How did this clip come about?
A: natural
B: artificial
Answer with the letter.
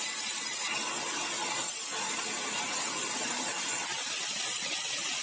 A